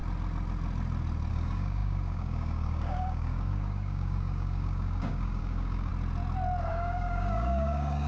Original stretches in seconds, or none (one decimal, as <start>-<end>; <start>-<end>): 0.0-1.3; 5.9-6.7